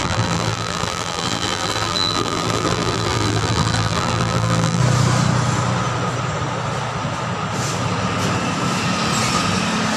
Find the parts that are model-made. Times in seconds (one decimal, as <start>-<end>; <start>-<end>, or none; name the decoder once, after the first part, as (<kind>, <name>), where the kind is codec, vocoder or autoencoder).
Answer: 0.0-4.8 (vocoder, BigVGAN v2)